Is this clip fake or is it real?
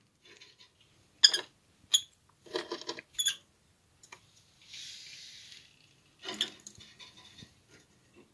real